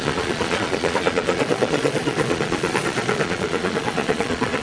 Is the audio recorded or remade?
remade